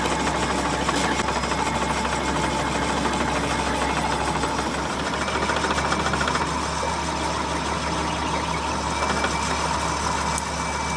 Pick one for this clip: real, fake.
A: real